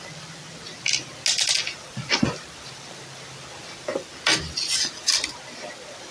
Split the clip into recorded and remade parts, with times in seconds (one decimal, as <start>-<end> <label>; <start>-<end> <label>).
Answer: 0.0-6.1 recorded

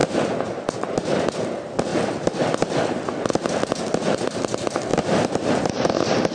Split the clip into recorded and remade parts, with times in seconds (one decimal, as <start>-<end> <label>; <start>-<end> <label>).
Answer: 0.0-0.7 recorded; 0.7-1.9 remade; 1.9-3.9 recorded; 3.9-6.3 remade

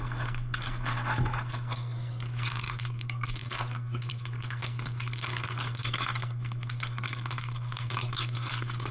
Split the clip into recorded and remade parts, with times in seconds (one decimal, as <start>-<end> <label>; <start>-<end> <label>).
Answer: 0.0-8.9 remade

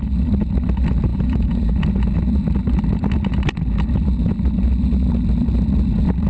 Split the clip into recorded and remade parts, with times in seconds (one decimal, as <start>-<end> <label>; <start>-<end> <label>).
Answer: 0.0-1.1 recorded; 1.1-1.7 remade; 1.7-6.3 recorded

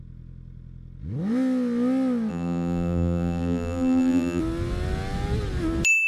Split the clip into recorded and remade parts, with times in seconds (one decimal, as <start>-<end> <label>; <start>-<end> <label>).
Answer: 0.0-2.3 recorded; 2.3-4.4 remade; 4.4-6.1 recorded

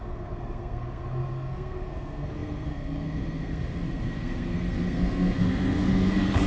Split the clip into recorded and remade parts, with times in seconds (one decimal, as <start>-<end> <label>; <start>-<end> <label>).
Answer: 0.0-6.5 remade

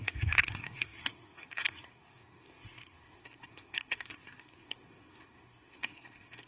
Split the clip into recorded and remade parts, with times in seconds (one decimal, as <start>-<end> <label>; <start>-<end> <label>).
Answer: 0.0-6.5 remade